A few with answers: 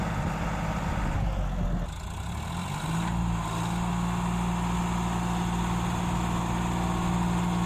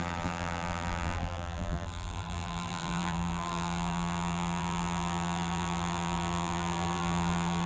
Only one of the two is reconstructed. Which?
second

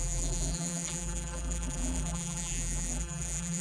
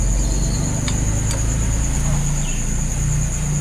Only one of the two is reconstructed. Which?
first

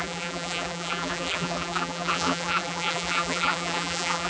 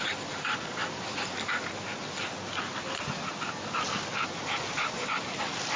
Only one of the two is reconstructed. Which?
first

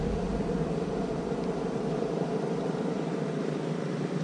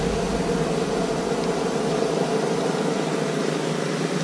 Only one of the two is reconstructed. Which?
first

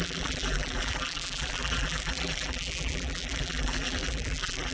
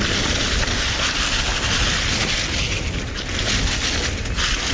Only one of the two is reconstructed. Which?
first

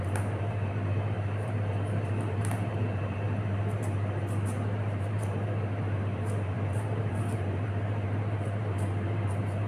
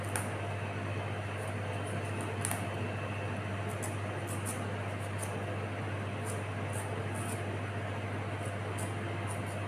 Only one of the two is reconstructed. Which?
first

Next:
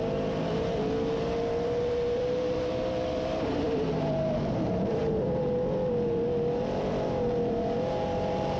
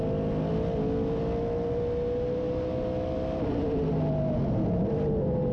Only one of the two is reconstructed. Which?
first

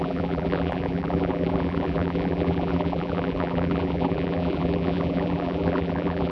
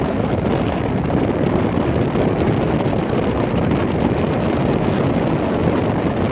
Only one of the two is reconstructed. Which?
first